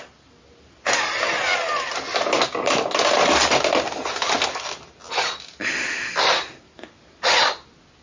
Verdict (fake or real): real